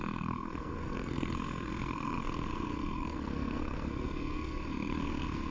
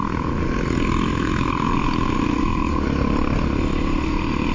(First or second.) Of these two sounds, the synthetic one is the first